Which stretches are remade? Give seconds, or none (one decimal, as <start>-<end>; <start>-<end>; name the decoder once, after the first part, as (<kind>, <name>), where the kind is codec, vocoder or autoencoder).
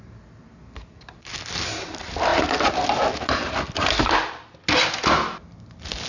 none